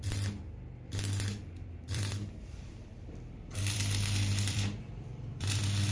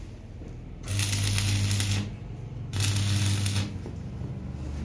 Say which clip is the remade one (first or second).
first